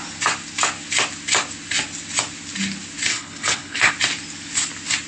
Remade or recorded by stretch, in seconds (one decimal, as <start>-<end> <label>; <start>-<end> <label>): 0.0-3.1 recorded; 3.1-3.9 remade; 3.9-5.1 recorded